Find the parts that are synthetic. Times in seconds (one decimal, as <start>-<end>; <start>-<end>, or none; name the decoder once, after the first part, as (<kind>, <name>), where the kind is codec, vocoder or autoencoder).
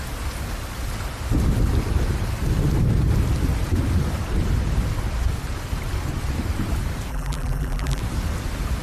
7.1-8.0 (vocoder, BigVGAN v2)